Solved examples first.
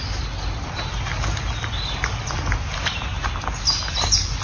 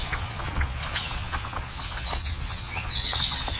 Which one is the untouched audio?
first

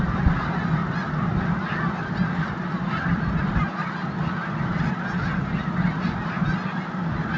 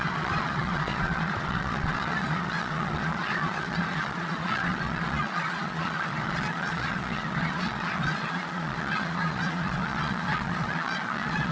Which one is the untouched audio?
first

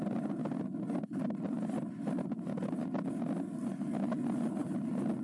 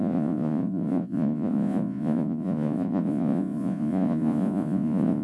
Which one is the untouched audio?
first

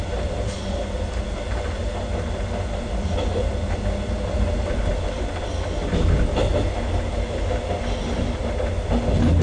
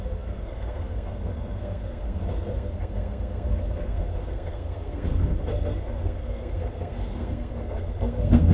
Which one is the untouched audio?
first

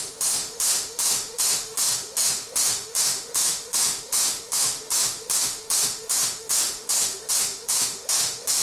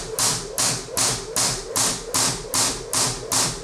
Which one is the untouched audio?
second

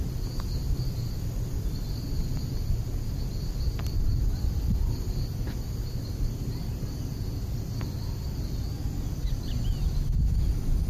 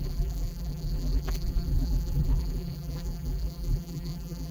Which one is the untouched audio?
first